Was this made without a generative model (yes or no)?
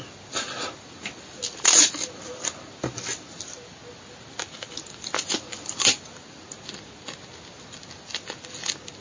yes